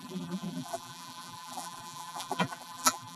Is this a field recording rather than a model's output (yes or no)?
no